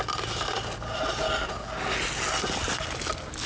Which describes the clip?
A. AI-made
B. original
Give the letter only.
B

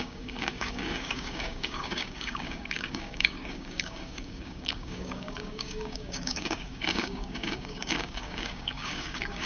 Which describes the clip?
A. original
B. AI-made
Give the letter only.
B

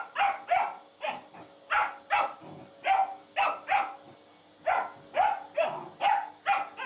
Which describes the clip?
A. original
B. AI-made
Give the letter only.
A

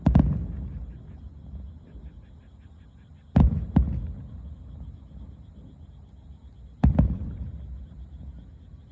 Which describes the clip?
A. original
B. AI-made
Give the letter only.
A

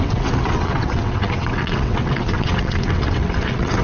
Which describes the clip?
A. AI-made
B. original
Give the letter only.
A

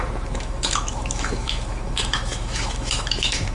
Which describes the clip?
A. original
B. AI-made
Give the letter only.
B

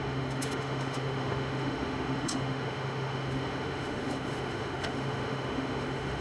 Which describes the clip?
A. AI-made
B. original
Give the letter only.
A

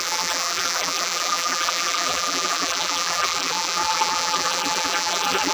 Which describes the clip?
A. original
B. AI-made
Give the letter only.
B